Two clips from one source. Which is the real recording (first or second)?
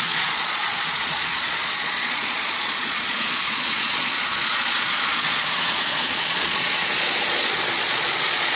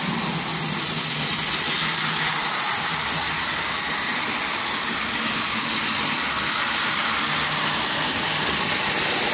second